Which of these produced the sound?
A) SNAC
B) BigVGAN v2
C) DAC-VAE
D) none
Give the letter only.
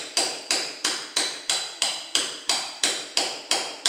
B